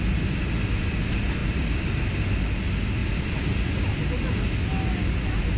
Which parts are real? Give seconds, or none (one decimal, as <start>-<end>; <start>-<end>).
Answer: 0.0-1.4; 2.0-5.6